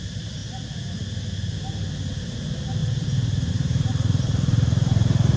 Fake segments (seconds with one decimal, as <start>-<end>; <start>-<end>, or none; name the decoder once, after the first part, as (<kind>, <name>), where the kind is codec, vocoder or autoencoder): 0.0-0.4 (vocoder, BigVGAN v2); 2.2-2.8; 3.5-5.4